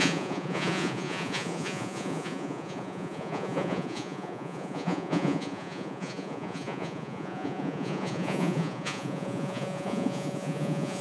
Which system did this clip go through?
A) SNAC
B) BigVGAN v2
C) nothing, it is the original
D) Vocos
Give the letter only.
D